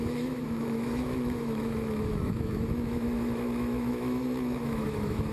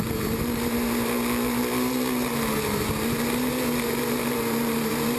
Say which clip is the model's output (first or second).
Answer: first